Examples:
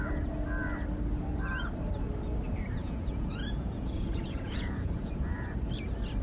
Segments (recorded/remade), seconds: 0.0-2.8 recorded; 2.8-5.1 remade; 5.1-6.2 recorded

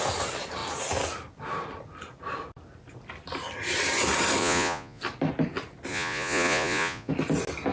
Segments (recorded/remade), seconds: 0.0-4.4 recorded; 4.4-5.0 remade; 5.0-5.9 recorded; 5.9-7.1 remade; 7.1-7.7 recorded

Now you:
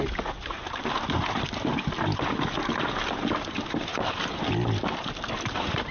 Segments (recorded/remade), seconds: 0.0-5.9 recorded